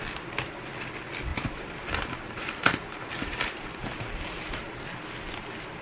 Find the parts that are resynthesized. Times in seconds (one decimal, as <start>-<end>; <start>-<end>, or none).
1.3-4.8